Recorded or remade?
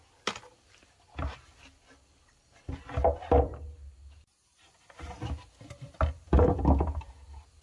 recorded